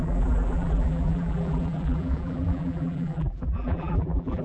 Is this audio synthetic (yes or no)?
yes